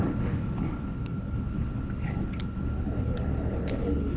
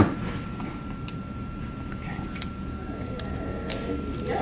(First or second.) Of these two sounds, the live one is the second